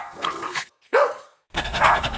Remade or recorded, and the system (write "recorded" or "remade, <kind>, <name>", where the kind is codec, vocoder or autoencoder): remade, codec, SNAC